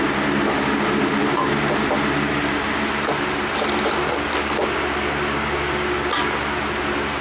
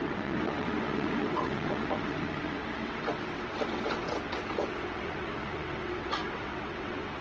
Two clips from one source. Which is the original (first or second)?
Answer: first